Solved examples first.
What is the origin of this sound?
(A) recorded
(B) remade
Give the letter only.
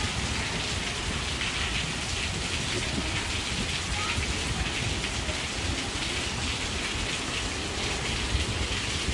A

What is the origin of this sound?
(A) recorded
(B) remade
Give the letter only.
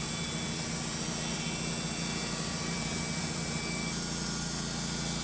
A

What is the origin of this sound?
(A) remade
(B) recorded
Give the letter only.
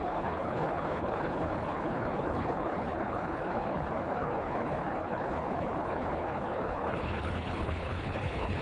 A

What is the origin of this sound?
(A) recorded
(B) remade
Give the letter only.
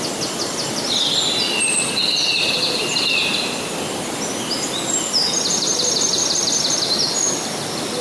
A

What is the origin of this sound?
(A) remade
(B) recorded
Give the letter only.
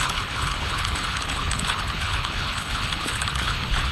A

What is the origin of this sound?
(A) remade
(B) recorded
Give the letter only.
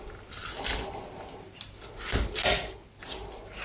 B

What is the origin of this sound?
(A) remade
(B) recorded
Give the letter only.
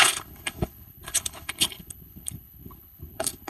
A